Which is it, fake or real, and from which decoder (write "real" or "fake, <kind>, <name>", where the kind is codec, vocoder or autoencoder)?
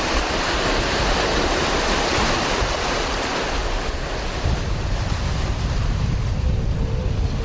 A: real